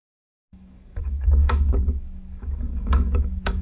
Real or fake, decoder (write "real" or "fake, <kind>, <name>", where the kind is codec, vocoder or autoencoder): fake, codec, DAC